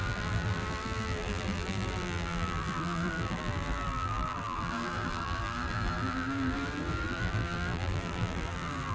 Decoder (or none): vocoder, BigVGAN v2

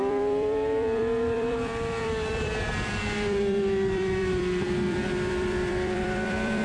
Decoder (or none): vocoder, BigVGAN v2